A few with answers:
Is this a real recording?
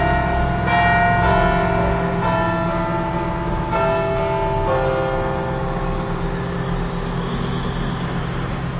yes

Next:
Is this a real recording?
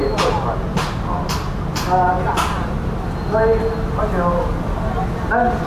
yes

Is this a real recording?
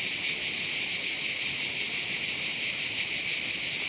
yes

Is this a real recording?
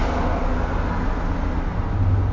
yes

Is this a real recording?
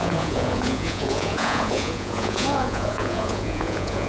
no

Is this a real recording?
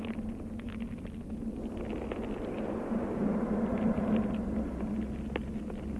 yes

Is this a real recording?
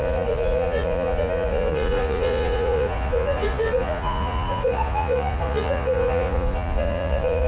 no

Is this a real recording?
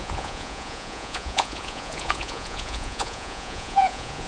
no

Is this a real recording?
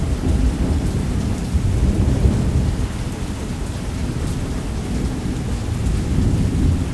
yes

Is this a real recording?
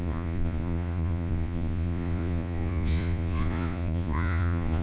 no